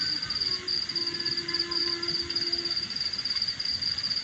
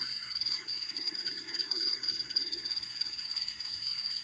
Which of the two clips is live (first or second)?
first